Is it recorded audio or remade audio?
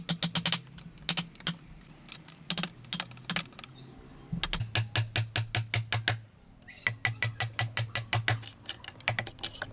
recorded